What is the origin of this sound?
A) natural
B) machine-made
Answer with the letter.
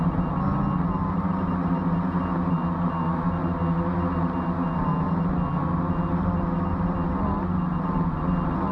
A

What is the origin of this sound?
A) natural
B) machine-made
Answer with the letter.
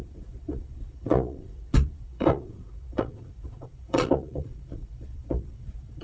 B